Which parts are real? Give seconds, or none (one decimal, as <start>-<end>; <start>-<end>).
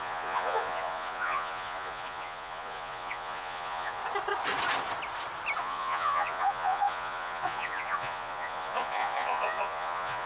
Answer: 4.0-5.6